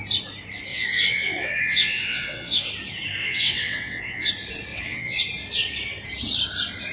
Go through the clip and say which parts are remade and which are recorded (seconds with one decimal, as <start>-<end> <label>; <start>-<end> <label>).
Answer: 0.0-0.7 recorded; 0.7-2.7 remade; 2.7-3.2 recorded; 3.2-4.3 remade; 4.3-4.7 recorded; 4.7-5.2 remade; 5.2-6.9 recorded